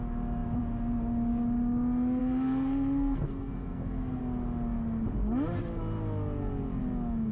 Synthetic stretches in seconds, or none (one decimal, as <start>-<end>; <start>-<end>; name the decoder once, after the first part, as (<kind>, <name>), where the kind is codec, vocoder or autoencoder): 2.2-4.2 (codec, SNAC)